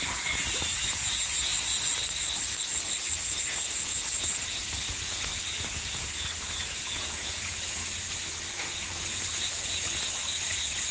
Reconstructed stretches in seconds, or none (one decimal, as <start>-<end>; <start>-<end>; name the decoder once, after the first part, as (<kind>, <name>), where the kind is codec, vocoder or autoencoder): 0.0-1.5 (vocoder, Vocos); 3.4-7.8; 8.5-10.9